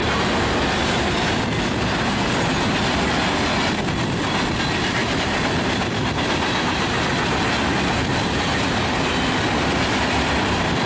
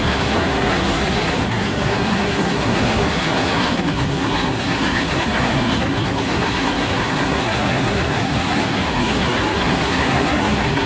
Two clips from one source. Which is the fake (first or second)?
second